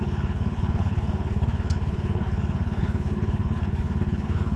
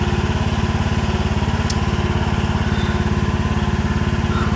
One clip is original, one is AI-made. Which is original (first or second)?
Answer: second